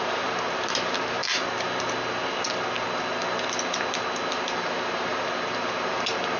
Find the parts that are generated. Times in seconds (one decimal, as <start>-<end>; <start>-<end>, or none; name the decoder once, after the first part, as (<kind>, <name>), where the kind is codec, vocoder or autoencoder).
0.0-1.2 (vocoder, BigVGAN v2); 4.3-6.4